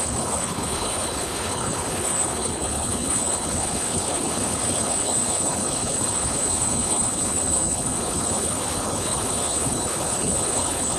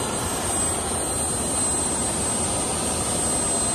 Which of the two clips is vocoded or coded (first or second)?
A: first